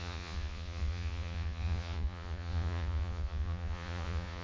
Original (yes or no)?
no